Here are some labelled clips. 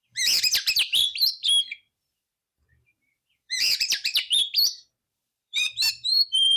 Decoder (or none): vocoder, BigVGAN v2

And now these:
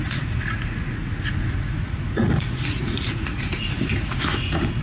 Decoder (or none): vocoder, Vocos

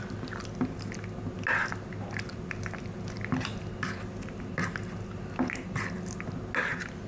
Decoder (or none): none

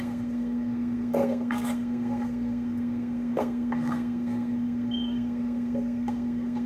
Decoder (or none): codec, SNAC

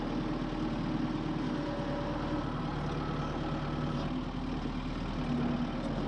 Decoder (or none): none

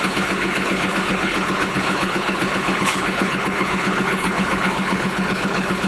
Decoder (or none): codec, HILCodec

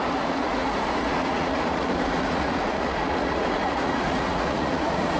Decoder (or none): vocoder, Vocos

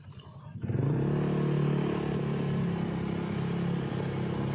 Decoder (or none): none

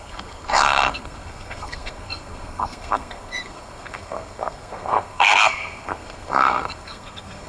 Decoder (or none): codec, SNAC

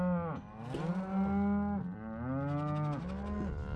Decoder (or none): none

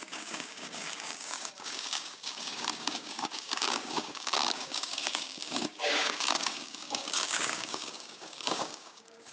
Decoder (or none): codec, DAC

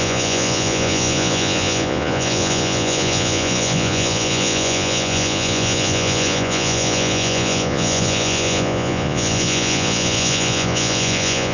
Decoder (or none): vocoder, Vocos